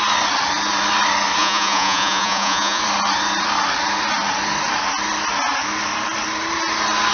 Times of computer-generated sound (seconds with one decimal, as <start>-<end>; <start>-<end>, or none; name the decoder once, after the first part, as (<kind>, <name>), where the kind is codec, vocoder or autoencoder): 1.4-2.8 (vocoder, Vocos)